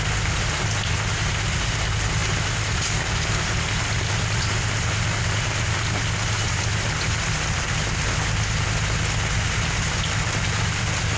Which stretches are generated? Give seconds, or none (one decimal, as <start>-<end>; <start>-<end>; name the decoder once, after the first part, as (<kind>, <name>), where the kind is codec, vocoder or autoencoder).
none